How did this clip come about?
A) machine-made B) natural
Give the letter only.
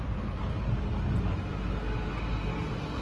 B